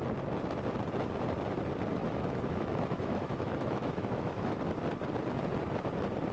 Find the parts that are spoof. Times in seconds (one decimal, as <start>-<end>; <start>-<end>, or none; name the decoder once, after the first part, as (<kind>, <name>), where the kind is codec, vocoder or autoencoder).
2.0-4.6 (autoencoder, DAC-VAE)